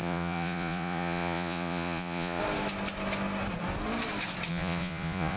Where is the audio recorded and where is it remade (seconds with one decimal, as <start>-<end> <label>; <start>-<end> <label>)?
0.0-2.4 remade; 2.4-4.5 recorded; 4.5-5.4 remade